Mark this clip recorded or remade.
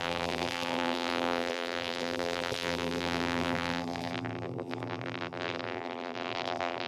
remade